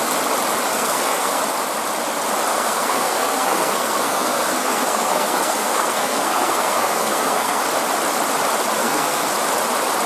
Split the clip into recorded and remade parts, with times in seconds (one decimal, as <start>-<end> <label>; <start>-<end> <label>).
0.0-0.7 recorded; 0.7-1.4 remade; 1.4-2.5 recorded; 2.5-7.6 remade; 7.6-8.8 recorded; 8.8-9.3 remade; 9.3-10.1 recorded